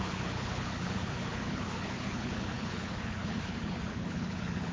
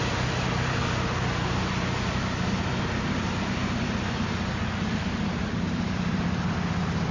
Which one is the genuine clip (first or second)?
second